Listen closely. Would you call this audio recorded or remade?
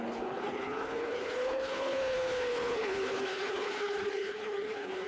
remade